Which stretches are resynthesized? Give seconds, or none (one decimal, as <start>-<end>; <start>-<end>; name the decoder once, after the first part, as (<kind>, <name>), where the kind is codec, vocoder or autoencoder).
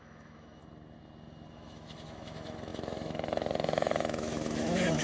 0.0-0.6 (autoencoder, DAC-VAE); 1.5-5.0